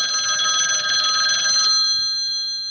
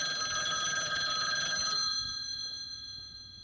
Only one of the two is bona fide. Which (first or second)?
first